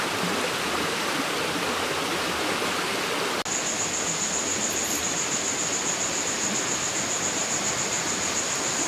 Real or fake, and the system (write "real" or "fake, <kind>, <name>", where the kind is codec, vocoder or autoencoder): real